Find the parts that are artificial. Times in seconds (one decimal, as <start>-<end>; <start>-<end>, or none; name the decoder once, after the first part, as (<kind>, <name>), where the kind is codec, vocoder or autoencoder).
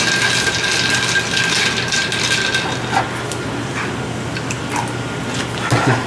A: none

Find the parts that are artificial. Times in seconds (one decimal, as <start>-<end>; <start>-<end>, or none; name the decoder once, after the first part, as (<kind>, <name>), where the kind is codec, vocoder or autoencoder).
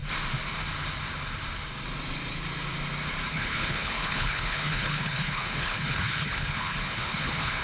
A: 3.3-7.6 (codec, HILCodec)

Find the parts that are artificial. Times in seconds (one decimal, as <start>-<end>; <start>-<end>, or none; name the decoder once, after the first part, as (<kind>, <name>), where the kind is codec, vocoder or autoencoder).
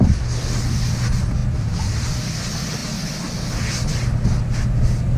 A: none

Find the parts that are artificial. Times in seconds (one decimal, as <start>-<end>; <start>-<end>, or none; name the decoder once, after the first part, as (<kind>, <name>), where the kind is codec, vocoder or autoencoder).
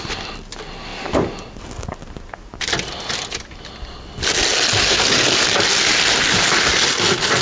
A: none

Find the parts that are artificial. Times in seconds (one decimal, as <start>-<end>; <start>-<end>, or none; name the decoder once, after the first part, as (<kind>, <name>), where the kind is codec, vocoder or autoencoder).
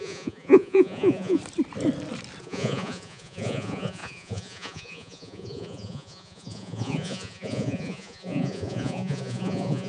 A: 0.0-1.4 (vocoder, Vocos); 2.4-9.9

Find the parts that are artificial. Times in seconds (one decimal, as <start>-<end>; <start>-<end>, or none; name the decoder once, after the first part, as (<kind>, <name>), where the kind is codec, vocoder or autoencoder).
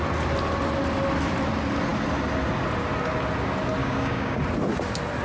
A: 3.8-4.4 (codec, DAC)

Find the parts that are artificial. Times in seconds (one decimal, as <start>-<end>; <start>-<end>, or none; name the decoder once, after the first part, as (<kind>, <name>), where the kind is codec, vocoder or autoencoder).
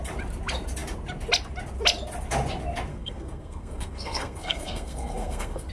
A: 2.9-5.7 (codec, SNAC)